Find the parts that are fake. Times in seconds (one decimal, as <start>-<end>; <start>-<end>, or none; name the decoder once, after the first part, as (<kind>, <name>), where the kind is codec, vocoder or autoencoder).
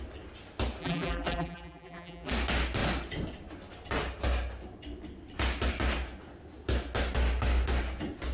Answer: 0.8-2.3 (vocoder, BigVGAN v2)